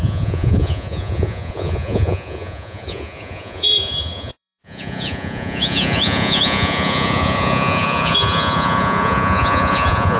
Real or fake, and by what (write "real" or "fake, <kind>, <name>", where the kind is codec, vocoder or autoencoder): fake, vocoder, Vocos